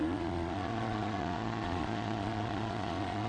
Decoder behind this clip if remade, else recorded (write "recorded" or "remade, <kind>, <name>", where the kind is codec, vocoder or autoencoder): remade, vocoder, Vocos